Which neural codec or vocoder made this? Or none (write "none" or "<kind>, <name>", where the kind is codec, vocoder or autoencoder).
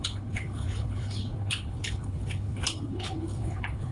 codec, HILCodec